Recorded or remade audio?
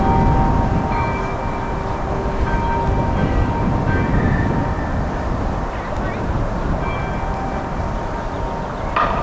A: recorded